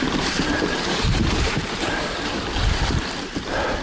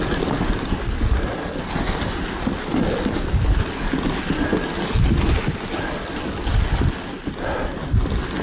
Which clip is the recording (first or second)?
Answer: second